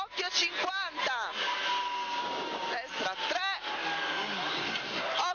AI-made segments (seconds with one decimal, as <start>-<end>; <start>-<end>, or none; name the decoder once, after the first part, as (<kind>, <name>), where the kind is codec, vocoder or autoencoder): none